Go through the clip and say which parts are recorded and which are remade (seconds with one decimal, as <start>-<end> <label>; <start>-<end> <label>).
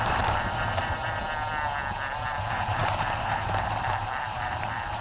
0.0-1.2 remade; 1.2-2.2 recorded; 2.2-5.0 remade